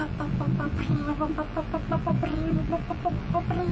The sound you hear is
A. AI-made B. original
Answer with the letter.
A